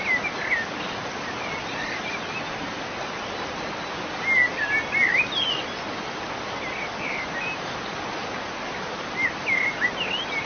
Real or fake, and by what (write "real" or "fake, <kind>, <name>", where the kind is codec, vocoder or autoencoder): real